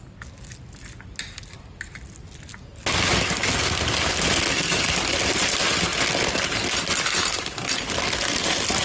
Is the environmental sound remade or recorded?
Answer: recorded